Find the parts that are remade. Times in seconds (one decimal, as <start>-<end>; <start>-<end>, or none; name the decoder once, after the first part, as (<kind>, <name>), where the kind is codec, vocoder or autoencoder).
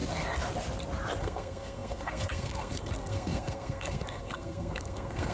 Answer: 1.2-5.3 (codec, SNAC)